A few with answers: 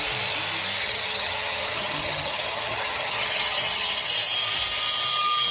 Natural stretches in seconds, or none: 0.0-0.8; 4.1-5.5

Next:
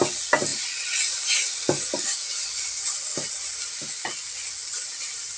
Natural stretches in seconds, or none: 0.0-5.4

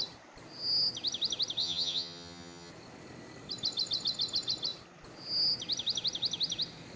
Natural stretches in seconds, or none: 0.0-1.6; 2.7-7.0

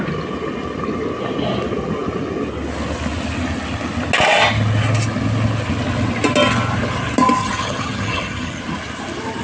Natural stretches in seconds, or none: 0.0-7.4; 8.6-9.4

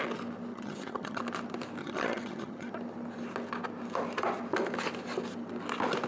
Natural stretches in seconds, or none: 0.0-0.5; 1.2-1.8; 2.7-6.1

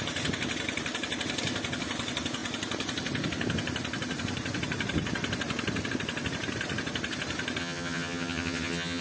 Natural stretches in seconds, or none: 0.0-7.6